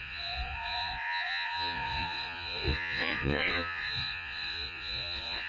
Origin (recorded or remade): remade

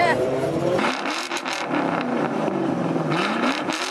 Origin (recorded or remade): remade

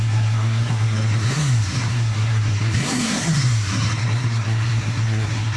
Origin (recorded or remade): remade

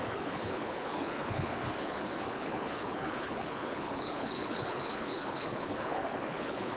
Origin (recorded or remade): remade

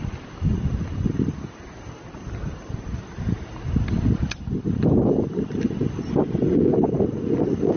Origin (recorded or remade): recorded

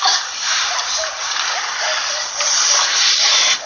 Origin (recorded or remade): recorded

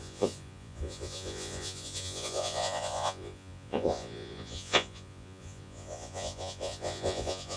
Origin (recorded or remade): remade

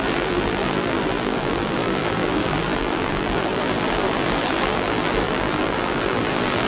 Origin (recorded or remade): remade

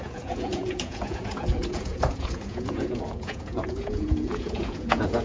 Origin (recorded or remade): remade